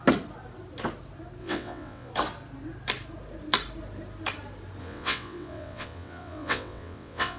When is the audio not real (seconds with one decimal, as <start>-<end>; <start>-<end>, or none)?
1.4-2.1; 4.8-7.4